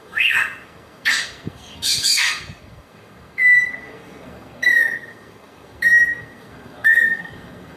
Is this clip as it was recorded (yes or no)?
no